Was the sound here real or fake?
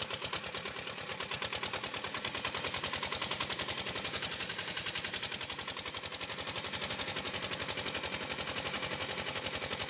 real